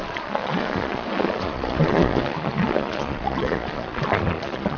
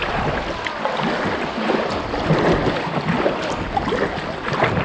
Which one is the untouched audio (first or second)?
second